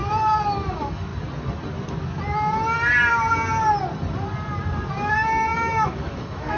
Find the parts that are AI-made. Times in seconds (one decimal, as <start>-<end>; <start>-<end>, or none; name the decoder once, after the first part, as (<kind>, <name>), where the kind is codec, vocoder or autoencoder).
0.7-1.1 (autoencoder, DAC-VAE); 5.1-6.6